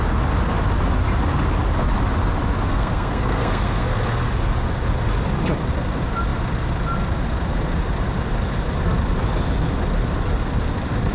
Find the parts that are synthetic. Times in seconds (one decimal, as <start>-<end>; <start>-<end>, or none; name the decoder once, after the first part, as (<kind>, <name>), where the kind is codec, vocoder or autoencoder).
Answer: 2.7-4.0 (codec, SNAC)